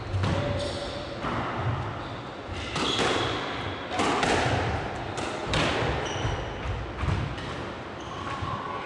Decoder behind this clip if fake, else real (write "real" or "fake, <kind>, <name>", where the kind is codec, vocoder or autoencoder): real